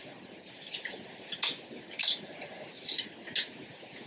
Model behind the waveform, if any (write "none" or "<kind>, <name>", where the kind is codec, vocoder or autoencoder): none